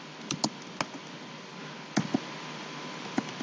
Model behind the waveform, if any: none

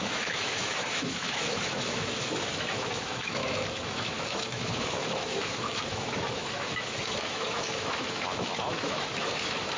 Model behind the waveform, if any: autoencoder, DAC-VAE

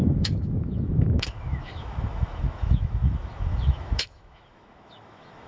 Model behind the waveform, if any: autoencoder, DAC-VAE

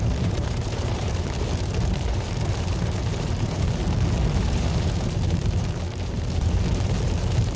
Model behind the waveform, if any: vocoder, BigVGAN v2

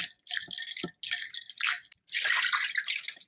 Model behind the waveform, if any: none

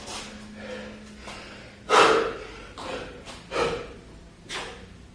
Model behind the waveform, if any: none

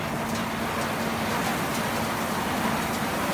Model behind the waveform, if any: none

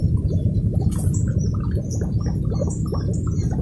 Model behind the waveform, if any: none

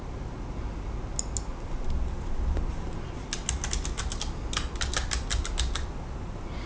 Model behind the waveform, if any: none